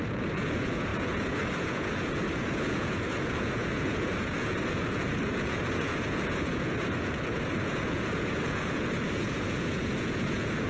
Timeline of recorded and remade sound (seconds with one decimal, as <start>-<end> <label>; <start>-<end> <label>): 0.0-10.7 remade